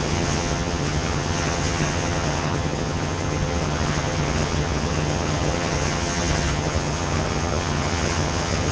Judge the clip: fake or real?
fake